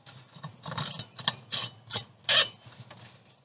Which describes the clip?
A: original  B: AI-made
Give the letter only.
A